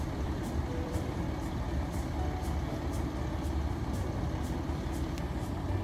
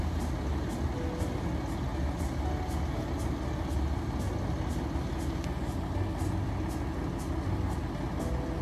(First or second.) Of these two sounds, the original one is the second